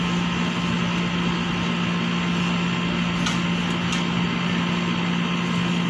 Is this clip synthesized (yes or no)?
no